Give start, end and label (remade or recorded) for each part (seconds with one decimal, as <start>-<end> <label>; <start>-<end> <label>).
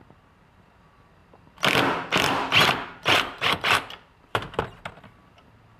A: 0.0-1.2 recorded; 1.2-4.6 remade; 4.6-5.8 recorded